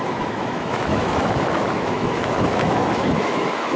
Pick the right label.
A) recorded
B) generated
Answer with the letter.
B